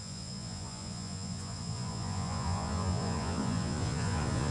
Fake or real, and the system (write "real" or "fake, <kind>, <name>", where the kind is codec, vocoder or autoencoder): fake, vocoder, Vocos